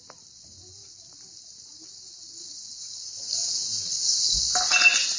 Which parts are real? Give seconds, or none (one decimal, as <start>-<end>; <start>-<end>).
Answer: 0.0-5.2